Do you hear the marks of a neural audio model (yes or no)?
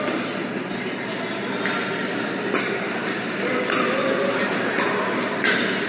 no